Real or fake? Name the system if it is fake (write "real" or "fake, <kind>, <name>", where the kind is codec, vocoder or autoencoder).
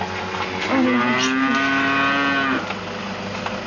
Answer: real